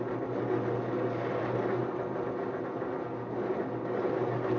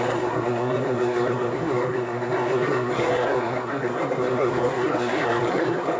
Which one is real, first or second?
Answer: first